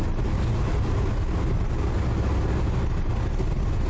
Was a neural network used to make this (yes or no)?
no